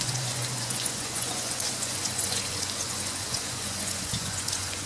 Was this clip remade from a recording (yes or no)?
yes